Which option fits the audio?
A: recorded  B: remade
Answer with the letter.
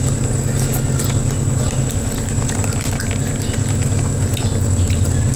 A